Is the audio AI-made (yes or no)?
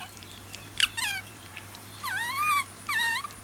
yes